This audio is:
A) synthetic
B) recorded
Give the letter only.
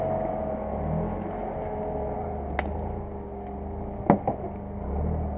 B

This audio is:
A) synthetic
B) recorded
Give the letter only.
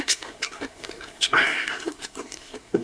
A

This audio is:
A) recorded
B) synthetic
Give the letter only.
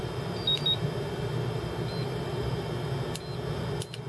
A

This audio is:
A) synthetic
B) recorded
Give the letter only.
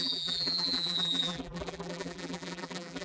A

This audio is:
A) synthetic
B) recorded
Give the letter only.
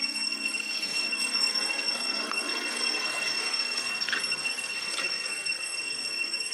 A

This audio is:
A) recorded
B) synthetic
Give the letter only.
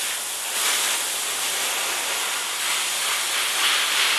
A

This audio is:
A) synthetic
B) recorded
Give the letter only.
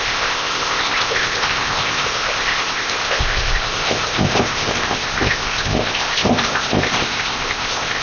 A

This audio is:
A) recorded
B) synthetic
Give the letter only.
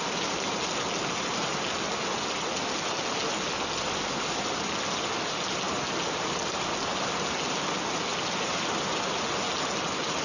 A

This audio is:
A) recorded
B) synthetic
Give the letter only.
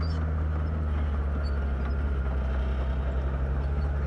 A